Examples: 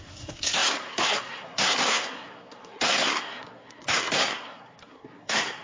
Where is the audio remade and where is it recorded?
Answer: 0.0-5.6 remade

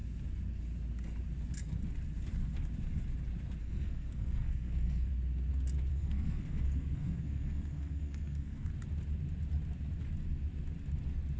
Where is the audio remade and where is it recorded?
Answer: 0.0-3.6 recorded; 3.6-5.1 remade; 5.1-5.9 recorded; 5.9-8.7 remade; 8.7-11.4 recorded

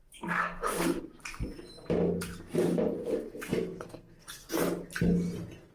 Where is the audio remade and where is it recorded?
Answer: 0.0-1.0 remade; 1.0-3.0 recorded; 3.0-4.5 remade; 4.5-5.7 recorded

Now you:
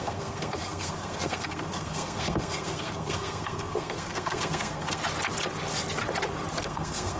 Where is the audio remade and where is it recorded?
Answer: 0.0-5.0 remade; 5.0-6.6 recorded; 6.6-7.2 remade